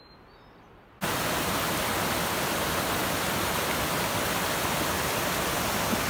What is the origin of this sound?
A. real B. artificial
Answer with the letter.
A